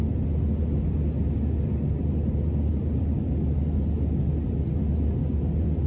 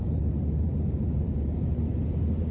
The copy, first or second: second